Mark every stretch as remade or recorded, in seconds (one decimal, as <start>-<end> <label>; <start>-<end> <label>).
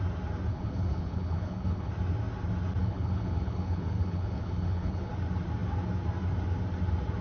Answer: 0.0-0.5 recorded; 0.5-1.9 remade; 1.9-2.8 recorded; 2.8-5.1 remade; 5.1-7.2 recorded